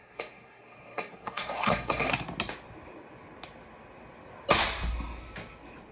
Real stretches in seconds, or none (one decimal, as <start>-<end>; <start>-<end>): 2.1-5.9